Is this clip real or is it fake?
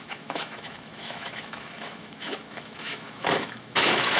fake